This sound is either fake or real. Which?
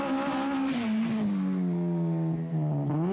real